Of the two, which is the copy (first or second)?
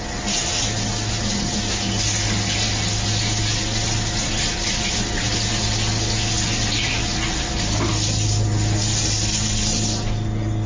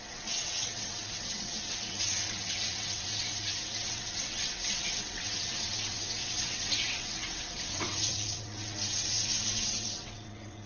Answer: second